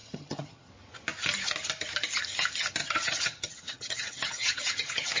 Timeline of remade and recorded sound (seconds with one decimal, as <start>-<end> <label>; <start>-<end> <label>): 0.0-0.7 remade; 0.7-2.8 recorded; 2.8-5.2 remade